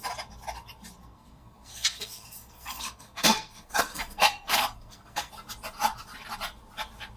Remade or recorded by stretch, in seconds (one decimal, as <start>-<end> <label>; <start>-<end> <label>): 0.0-1.0 recorded; 1.0-5.3 remade; 5.3-7.2 recorded